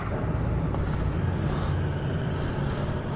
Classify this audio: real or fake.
real